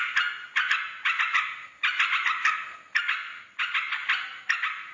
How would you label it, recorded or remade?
recorded